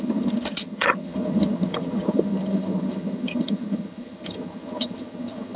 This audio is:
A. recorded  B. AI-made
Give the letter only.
B